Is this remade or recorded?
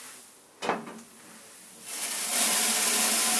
recorded